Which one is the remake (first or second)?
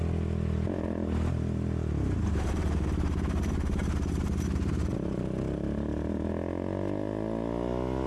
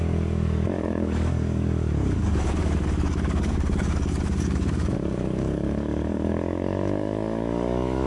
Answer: second